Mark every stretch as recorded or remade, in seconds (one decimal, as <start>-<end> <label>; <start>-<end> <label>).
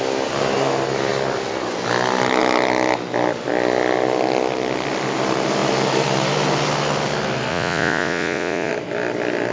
0.0-7.5 recorded; 7.5-8.7 remade; 8.7-9.5 recorded